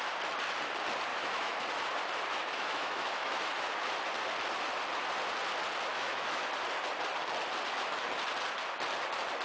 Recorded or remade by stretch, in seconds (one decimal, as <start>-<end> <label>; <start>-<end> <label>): 0.0-1.1 recorded; 1.1-1.6 remade; 1.6-2.3 recorded; 2.3-3.5 remade; 3.5-5.9 recorded; 5.9-6.4 remade; 6.4-9.4 recorded